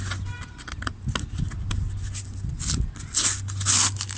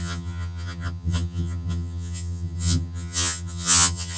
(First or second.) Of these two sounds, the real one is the first